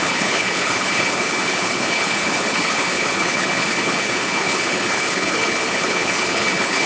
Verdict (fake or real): fake